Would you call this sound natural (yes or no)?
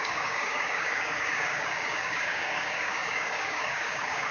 no